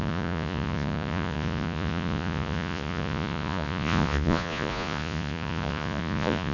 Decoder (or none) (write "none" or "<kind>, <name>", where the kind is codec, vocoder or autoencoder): vocoder, Vocos